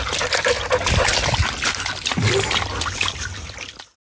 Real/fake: real